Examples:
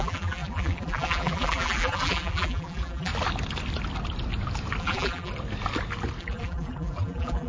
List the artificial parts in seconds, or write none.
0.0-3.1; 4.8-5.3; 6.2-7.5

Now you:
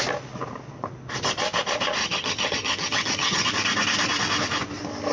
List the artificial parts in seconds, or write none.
2.0-3.5

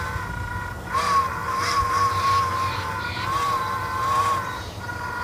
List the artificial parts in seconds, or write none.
0.0-5.2

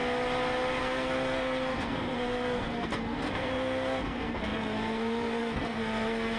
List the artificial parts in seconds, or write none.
0.8-6.4

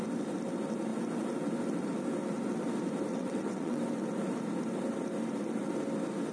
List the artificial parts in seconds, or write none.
3.1-3.8

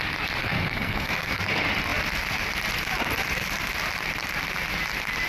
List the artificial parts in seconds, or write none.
0.4-1.4